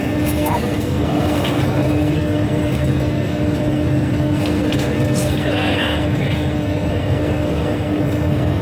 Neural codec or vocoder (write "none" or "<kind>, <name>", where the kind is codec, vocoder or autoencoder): codec, SNAC